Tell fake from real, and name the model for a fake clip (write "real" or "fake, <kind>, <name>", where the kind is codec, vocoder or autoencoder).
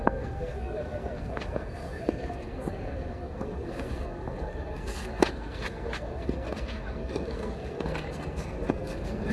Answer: fake, codec, SNAC